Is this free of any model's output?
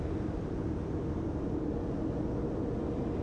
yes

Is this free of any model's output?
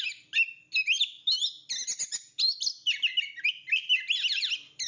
yes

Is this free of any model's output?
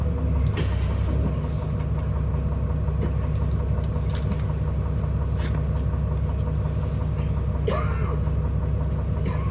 yes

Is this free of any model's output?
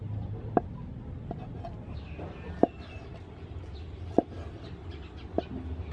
yes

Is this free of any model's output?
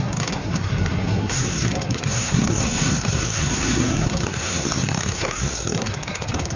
no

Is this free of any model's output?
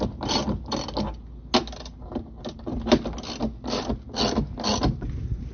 yes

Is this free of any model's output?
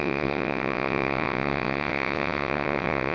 no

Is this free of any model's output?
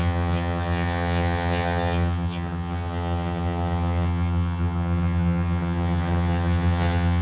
no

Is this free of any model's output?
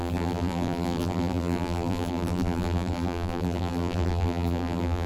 no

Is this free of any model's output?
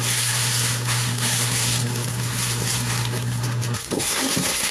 no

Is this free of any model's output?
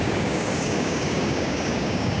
no